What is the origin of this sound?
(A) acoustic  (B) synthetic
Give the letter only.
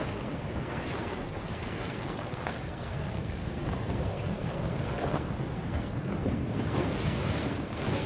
B